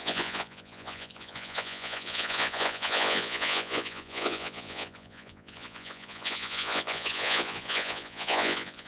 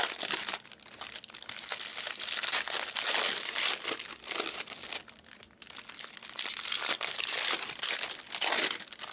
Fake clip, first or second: first